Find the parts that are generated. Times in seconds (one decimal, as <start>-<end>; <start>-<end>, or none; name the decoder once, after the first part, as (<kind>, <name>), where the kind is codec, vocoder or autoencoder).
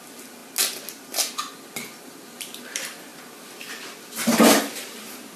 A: 0.0-0.4 (vocoder, BigVGAN v2); 1.7-3.1; 4.6-5.4